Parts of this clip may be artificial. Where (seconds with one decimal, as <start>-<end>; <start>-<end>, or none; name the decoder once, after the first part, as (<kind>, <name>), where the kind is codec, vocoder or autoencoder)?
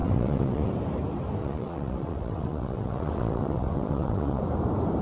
0.0-0.7 (vocoder, WaveNeXt); 1.4-4.4